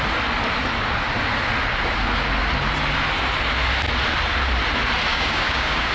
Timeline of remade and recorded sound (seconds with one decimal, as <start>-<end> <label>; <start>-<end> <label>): 0.0-5.1 recorded; 5.1-5.9 remade